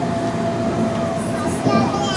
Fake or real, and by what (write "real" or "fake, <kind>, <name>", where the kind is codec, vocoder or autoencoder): real